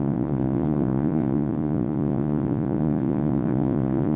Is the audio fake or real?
fake